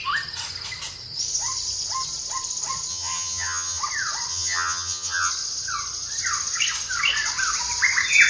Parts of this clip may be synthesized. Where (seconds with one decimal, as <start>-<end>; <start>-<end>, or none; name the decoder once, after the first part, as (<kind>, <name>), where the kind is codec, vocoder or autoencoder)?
2.9-3.8 (vocoder, HiFi-GAN); 4.3-5.3